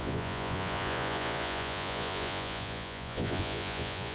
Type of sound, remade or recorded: remade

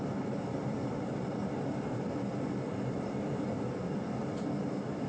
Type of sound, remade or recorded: remade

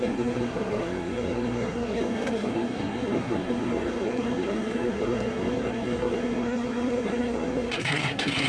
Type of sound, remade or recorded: remade